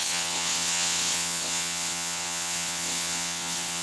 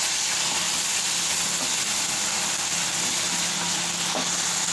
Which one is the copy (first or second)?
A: first